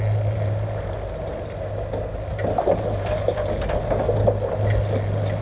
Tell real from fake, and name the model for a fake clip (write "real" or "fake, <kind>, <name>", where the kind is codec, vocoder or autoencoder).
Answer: real